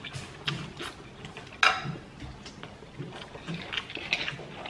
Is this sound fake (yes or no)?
no